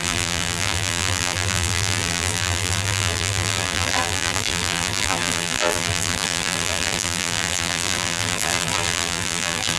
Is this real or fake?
fake